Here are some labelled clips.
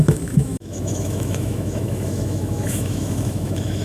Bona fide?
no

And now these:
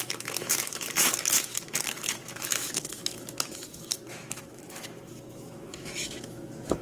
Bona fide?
no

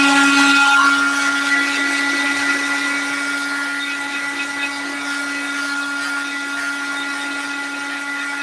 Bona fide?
yes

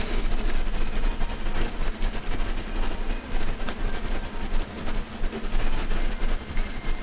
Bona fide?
yes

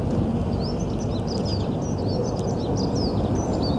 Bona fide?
yes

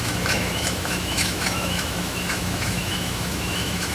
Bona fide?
no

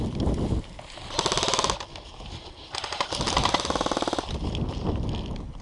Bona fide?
yes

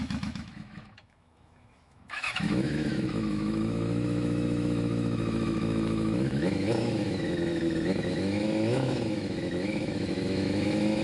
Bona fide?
no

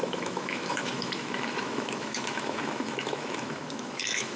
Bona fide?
no